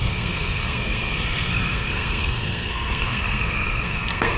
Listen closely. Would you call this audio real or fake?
fake